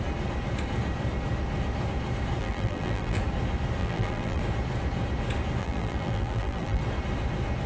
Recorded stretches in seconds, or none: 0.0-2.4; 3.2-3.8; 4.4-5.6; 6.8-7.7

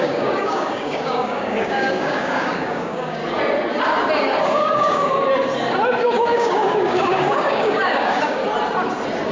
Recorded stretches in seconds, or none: 3.2-4.4; 5.1-6.0; 8.4-9.3

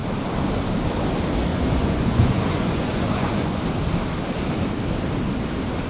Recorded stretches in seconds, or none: 0.0-1.5; 3.6-5.9

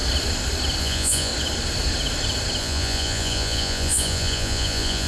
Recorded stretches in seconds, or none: 0.0-0.8; 1.3-2.6

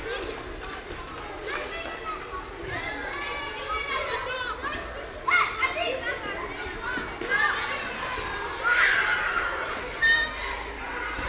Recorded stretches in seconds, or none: 0.0-11.3

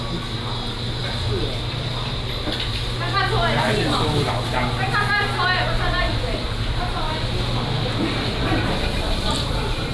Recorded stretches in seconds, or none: 0.0-9.9

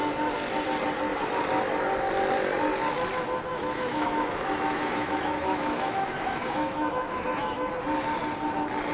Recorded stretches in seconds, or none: 0.0-3.5; 7.7-8.9